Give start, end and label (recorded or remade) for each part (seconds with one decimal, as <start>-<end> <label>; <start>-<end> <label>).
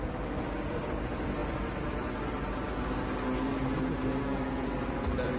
0.0-5.4 recorded